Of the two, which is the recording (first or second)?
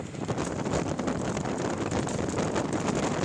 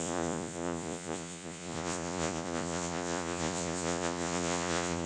first